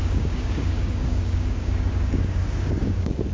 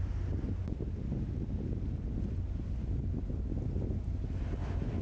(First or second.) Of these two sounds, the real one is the second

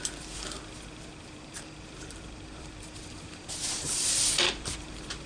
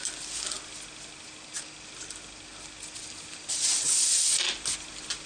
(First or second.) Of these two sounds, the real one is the second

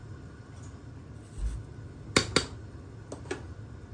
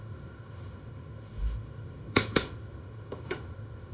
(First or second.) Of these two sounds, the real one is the first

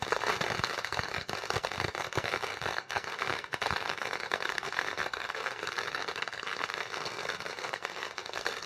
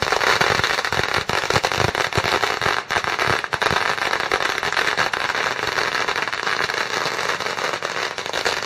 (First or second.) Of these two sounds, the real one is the second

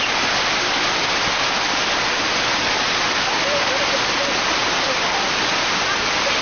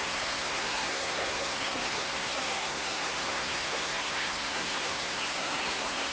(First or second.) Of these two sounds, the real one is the first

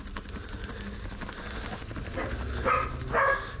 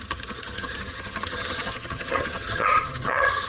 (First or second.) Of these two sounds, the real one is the first